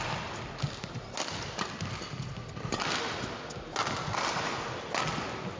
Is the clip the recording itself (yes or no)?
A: yes